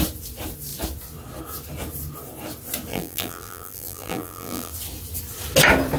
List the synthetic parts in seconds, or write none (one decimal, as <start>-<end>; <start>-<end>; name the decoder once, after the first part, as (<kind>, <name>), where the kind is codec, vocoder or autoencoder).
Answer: 2.9-4.7 (vocoder, BigVGAN v2)